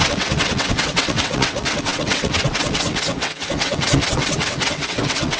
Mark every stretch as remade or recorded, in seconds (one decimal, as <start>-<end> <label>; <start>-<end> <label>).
0.0-5.4 remade